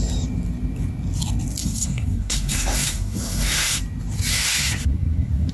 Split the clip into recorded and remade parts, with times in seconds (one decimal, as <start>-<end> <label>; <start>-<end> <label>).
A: 0.0-1.6 recorded; 1.6-3.8 remade; 3.8-4.3 recorded; 4.3-5.5 remade